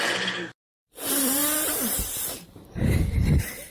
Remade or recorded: remade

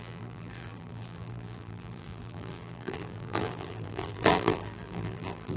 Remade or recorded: remade